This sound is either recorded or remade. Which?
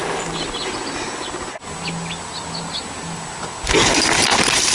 recorded